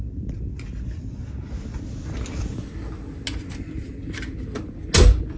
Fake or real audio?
real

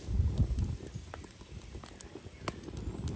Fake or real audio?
real